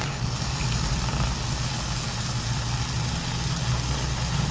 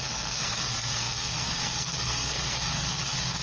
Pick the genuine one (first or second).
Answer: first